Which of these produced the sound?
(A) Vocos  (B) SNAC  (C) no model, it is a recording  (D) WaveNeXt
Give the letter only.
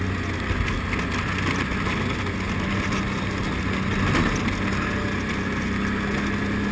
C